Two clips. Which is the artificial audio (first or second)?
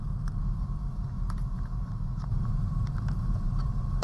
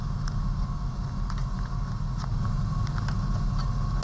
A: first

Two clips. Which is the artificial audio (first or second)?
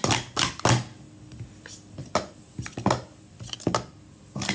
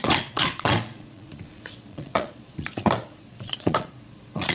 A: second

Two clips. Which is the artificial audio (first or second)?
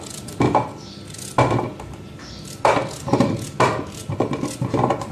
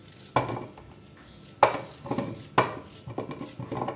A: first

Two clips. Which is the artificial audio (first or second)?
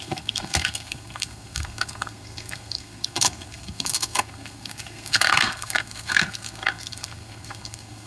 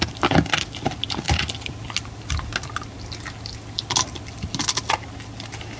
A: first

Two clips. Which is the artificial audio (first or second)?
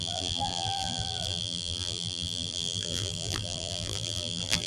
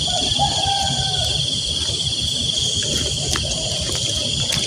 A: first